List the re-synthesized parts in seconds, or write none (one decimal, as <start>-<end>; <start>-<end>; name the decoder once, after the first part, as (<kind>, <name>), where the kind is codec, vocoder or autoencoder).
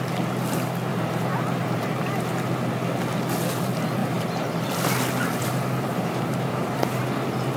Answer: 0.9-1.9 (vocoder, BigVGAN v2); 4.0-4.7; 5.4-7.0